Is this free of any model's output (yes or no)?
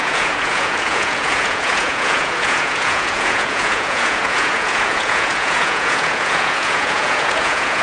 no